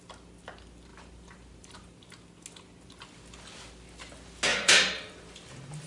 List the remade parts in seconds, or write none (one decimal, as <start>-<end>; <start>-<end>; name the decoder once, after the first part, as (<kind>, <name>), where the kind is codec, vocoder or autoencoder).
0.9-2.0 (vocoder, BigVGAN v2); 4.5-5.9